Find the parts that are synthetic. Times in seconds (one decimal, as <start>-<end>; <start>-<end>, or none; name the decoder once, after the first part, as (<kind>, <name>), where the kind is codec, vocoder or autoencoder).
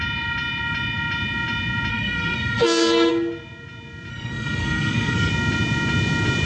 1.9-3.1 (codec, SNAC); 4.1-5.3